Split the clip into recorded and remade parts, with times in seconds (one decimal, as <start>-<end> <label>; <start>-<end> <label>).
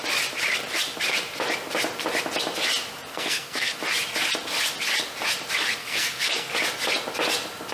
0.0-3.1 recorded; 3.1-3.8 remade; 3.8-5.8 recorded; 5.8-6.5 remade; 6.5-7.7 recorded